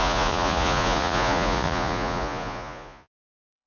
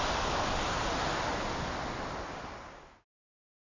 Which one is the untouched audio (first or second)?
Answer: second